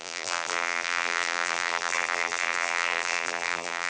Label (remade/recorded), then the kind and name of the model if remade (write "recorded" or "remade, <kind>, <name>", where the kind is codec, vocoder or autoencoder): remade, vocoder, BigVGAN v2